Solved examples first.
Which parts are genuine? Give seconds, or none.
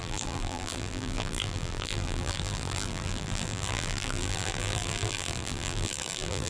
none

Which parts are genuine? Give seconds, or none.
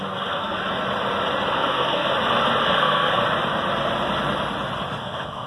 0.6-1.5; 2.1-2.6; 3.2-5.0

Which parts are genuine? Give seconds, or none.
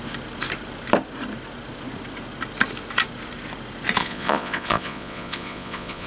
0.0-4.0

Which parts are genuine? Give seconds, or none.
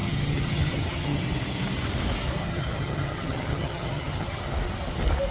1.2-2.4; 4.4-5.3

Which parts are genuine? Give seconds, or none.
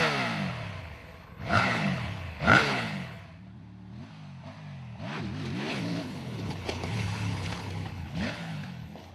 0.0-0.8; 3.2-5.7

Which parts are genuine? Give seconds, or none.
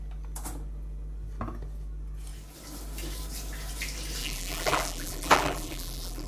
0.0-4.2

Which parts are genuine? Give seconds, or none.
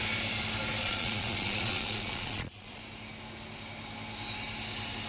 0.0-0.8; 2.8-5.1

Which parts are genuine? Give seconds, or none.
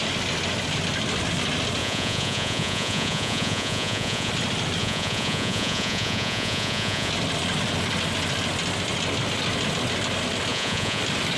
0.0-1.8; 4.3-4.8; 7.1-10.5; 11.0-11.4